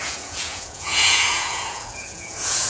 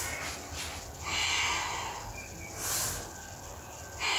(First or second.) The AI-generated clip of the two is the first